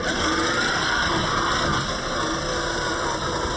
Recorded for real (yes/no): yes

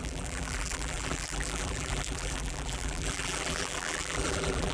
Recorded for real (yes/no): no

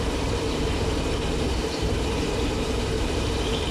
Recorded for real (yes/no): no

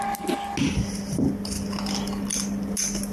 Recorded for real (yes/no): yes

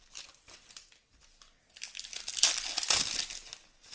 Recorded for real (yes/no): yes